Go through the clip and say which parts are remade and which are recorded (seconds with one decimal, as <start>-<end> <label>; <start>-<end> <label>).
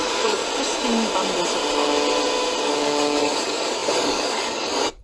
0.0-0.4 remade; 0.4-2.6 recorded; 2.6-5.0 remade